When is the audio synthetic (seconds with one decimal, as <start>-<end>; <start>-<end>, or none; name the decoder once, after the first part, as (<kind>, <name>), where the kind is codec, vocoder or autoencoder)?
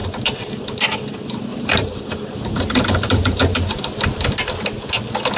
0.0-0.6 (vocoder, BigVGAN v2); 1.5-3.8